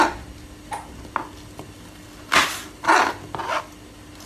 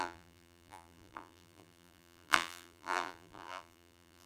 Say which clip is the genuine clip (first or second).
first